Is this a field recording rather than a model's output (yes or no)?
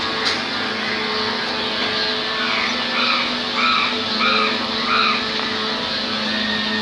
no